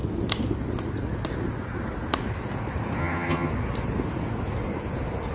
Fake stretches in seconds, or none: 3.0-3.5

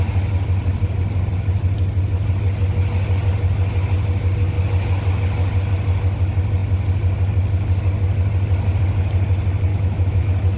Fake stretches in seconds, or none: 9.7-10.2

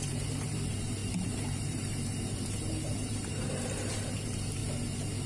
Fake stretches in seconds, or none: 0.0-4.6

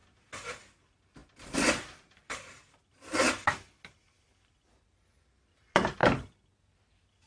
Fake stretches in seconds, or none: 0.7-6.0

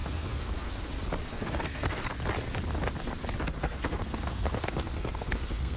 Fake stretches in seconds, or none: 0.0-0.7; 1.3-2.1; 3.6-5.8

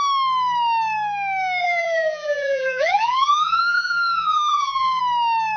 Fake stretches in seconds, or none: 1.6-5.0